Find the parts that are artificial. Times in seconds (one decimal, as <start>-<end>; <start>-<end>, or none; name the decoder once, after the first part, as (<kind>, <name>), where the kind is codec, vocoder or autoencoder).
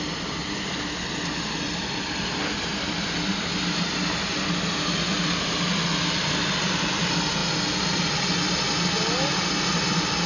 none